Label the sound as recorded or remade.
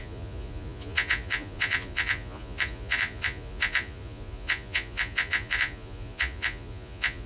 remade